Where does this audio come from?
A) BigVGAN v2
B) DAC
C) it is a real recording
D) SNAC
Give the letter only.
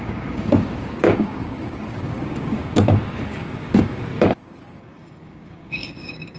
B